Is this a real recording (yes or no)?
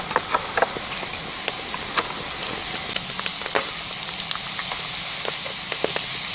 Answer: yes